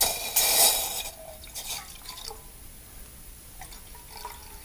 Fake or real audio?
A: real